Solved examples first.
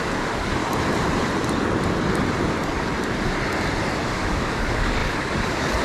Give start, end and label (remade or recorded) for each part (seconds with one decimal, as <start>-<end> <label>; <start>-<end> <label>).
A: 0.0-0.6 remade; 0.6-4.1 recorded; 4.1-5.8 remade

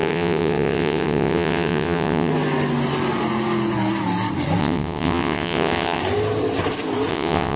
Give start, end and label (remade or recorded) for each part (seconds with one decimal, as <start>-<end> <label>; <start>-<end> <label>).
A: 0.0-2.3 remade; 2.3-4.6 recorded; 4.6-6.0 remade; 6.0-7.1 recorded; 7.1-7.6 remade

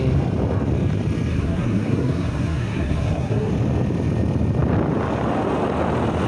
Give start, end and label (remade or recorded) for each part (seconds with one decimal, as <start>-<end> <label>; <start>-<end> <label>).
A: 0.0-1.3 recorded; 1.3-3.5 remade; 3.5-6.3 recorded

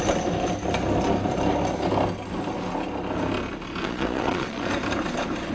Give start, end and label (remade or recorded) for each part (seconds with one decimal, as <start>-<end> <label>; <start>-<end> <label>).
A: 0.0-3.8 recorded; 3.8-4.7 remade; 4.7-5.5 recorded

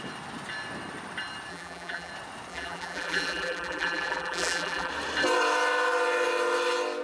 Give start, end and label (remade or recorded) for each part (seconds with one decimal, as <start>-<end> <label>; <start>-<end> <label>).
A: 0.0-1.5 recorded; 1.5-2.1 remade; 2.1-2.5 recorded; 2.5-4.9 remade; 4.9-7.0 recorded

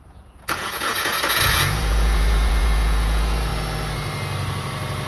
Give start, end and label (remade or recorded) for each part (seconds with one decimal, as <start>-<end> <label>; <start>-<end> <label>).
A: 0.0-3.5 remade; 3.5-5.1 recorded